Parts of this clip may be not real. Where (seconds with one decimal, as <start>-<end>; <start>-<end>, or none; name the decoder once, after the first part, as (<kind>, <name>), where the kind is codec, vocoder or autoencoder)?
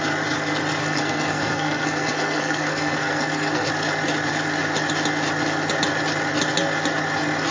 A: 0.8-3.7 (codec, SNAC)